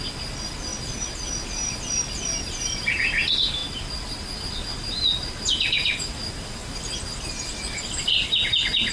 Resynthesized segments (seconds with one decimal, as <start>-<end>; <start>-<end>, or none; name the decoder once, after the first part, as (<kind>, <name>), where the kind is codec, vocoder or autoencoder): none